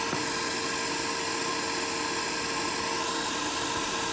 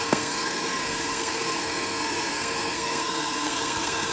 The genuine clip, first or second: first